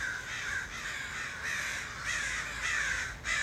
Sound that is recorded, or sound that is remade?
recorded